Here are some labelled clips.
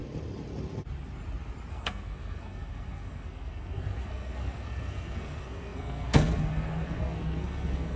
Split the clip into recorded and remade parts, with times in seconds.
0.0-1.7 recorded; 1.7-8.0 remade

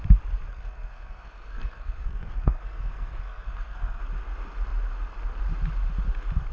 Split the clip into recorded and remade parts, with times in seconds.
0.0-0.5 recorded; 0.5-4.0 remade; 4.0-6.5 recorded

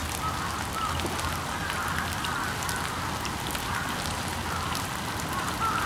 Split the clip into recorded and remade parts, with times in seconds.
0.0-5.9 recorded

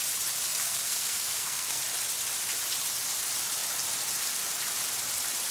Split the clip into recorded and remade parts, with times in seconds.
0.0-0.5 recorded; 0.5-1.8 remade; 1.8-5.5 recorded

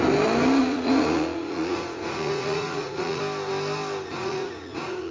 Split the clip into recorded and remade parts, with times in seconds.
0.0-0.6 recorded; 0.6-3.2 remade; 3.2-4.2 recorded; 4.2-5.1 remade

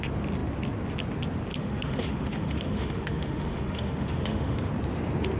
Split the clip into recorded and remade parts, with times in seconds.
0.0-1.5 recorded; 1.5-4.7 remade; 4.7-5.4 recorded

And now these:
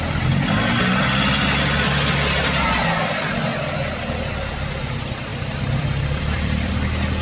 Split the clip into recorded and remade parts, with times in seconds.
0.0-5.3 recorded; 5.3-6.7 remade; 6.7-7.2 recorded

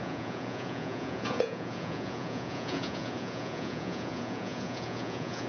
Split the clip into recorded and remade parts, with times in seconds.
0.0-5.5 remade